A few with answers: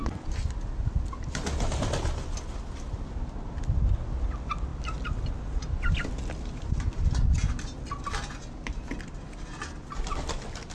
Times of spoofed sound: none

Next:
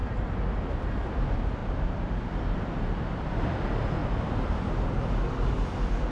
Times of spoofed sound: 0.7-1.6 (vocoder, BigVGAN v2); 2.3-6.1

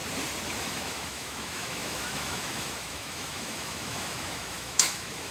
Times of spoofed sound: 0.6-5.3 (autoencoder, DAC-VAE)

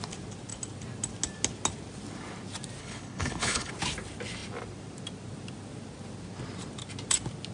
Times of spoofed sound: 2.8-3.7 (codec, HILCodec)

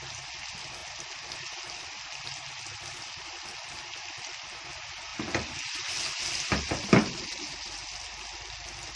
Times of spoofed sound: none

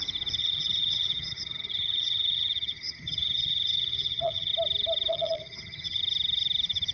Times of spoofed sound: 0.4-4.5 (vocoder, HiFi-GAN); 5.1-6.0

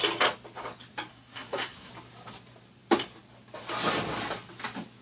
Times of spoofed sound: 1.1-1.9 (codec, SNAC)